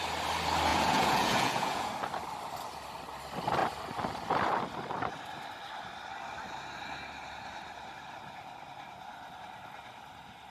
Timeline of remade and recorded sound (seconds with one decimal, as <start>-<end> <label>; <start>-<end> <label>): 0.0-0.7 recorded; 0.7-1.9 remade; 1.9-10.5 recorded